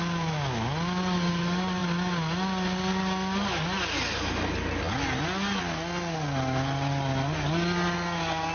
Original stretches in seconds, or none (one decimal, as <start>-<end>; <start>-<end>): 0.0-8.5